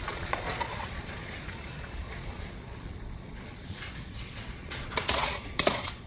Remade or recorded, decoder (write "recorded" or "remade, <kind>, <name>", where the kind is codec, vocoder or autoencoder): remade, vocoder, Vocos